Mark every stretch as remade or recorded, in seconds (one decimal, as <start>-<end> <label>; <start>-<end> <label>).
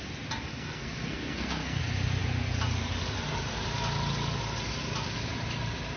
0.0-0.5 recorded; 0.5-1.8 remade; 1.8-6.0 recorded